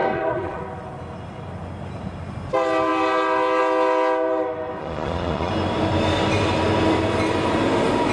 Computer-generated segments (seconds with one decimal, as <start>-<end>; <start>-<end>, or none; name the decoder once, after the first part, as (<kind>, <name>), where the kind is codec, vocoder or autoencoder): 0.0-0.6 (vocoder, Vocos); 4.8-5.5